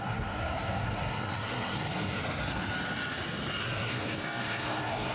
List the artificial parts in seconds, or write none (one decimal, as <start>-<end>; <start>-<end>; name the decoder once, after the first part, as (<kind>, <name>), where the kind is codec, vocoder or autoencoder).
0.0-2.2 (codec, SNAC); 3.6-5.1